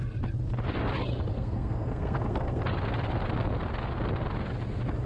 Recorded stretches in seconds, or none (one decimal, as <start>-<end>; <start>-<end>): 0.0-1.3; 2.6-5.1